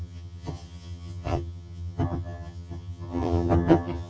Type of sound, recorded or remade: remade